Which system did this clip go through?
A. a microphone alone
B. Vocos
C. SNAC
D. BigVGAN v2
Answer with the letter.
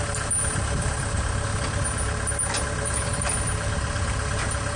A